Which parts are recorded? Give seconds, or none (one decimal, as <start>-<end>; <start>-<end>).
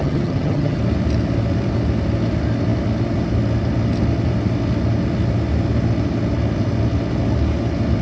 0.8-8.0